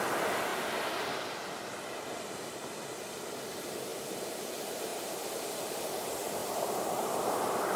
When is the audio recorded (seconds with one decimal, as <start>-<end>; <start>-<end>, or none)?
0.0-4.9; 5.7-6.4; 7.2-7.8